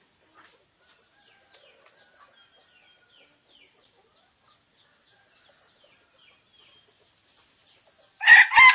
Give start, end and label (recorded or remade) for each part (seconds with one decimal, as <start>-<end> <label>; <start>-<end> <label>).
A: 0.0-8.7 recorded